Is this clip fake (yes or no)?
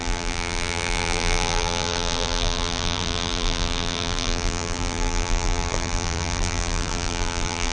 yes